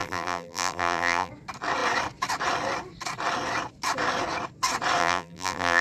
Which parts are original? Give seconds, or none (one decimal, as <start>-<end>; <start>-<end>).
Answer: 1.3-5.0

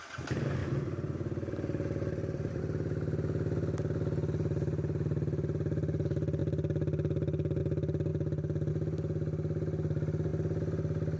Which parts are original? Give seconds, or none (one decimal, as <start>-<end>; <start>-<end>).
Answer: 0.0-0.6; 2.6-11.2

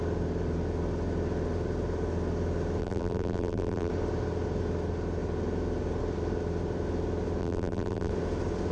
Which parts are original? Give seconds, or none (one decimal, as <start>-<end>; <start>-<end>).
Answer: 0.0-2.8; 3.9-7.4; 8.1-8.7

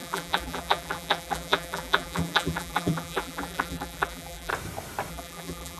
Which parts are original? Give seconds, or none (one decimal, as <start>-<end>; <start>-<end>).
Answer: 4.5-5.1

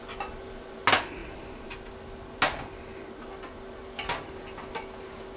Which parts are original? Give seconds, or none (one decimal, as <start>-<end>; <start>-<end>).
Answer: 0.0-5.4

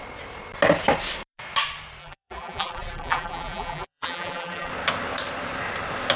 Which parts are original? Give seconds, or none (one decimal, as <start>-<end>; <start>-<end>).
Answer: 0.0-2.0; 4.7-6.2

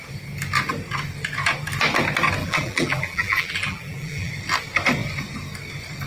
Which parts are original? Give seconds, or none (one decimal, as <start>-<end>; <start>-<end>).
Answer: 0.0-2.4; 4.3-6.1

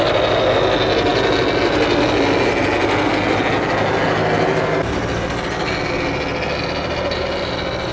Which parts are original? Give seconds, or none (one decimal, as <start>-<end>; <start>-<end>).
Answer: 0.0-7.9